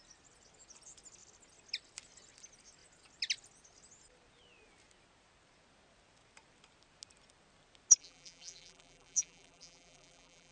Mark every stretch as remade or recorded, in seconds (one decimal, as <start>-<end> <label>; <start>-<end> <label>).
0.0-8.0 recorded; 8.0-10.5 remade